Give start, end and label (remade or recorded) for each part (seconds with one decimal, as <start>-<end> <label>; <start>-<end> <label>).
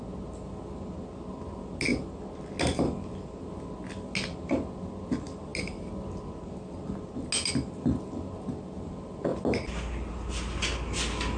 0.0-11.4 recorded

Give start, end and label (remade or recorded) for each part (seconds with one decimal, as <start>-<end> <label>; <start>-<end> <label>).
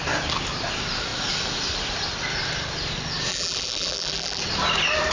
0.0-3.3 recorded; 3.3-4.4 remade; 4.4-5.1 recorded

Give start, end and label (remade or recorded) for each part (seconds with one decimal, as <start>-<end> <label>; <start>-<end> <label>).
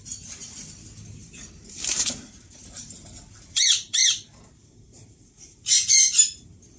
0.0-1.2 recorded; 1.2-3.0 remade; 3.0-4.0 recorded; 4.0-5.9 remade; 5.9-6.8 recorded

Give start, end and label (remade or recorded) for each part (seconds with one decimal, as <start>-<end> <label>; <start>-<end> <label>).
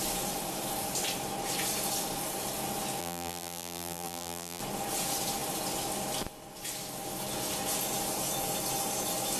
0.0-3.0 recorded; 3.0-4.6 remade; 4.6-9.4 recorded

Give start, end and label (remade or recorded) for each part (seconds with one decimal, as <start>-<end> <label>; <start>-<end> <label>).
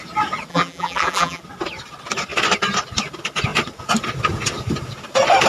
0.0-0.5 recorded; 0.5-1.4 remade; 1.4-5.5 recorded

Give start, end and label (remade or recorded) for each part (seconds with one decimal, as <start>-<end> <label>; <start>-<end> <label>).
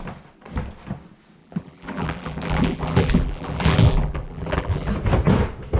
0.0-1.4 recorded; 1.4-4.9 remade; 4.9-5.8 recorded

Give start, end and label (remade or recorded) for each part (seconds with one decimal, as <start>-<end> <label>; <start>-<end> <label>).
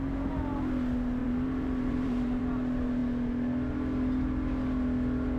0.0-1.2 recorded; 1.2-2.4 remade; 2.4-5.4 recorded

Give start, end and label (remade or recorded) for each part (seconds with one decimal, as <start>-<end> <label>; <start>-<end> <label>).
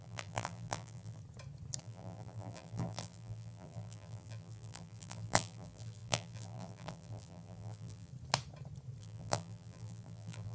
0.0-1.2 remade; 1.2-1.8 recorded; 1.8-8.1 remade; 8.1-9.0 recorded; 9.0-10.5 remade